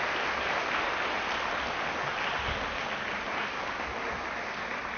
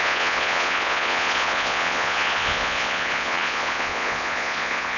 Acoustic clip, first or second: first